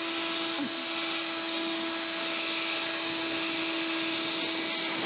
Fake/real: real